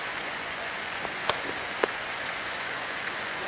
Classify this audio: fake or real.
fake